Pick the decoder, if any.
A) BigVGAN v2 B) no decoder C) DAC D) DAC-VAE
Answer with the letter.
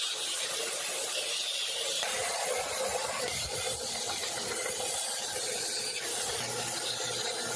B